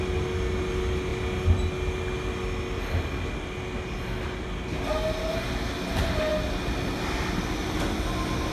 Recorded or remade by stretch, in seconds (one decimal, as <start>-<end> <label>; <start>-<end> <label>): 0.0-8.5 recorded